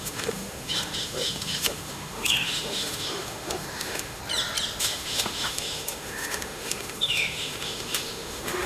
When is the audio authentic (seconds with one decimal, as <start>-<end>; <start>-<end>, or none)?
4.2-4.8